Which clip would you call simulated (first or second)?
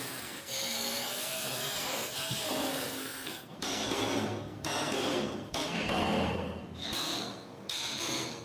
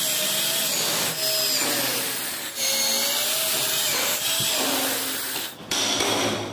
first